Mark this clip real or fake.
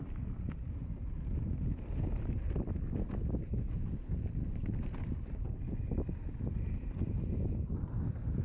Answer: real